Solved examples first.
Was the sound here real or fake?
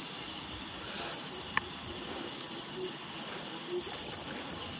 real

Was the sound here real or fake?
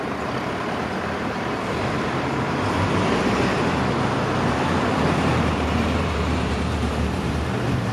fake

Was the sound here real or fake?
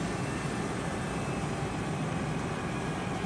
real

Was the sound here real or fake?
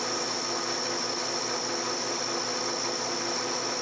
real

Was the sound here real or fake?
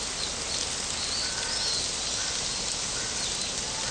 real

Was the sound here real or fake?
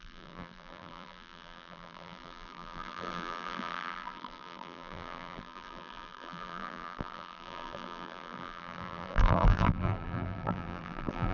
fake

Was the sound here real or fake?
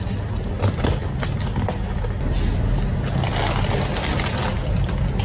real